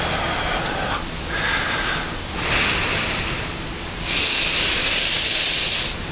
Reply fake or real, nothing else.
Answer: real